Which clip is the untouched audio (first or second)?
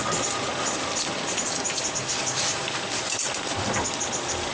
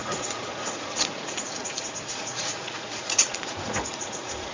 first